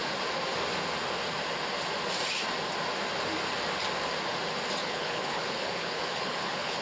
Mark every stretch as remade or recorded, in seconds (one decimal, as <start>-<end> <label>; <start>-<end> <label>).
0.0-4.8 recorded; 4.8-6.8 remade